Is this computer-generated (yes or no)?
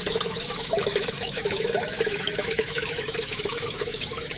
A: yes